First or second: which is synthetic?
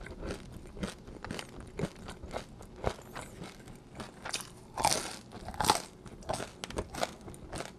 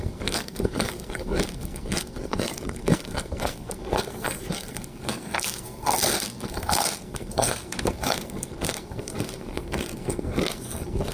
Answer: second